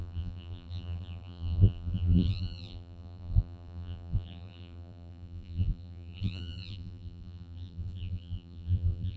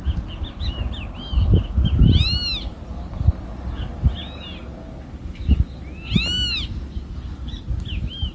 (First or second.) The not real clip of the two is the first